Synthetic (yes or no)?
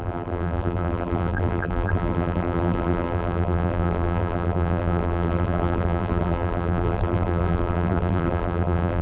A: yes